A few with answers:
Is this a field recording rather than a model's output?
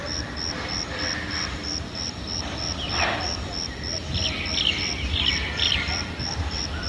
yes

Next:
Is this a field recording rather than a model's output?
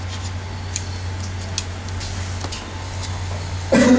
yes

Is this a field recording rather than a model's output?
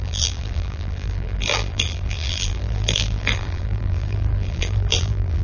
no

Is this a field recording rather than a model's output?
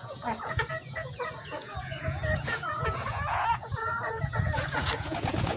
no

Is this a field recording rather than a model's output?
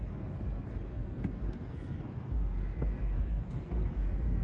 no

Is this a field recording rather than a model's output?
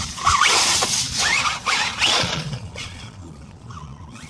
no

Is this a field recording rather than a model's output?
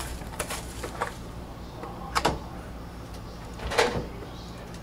no